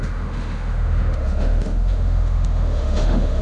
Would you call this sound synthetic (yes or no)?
yes